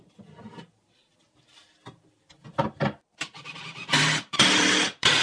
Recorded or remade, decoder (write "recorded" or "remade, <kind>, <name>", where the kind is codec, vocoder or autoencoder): remade, vocoder, BigVGAN v2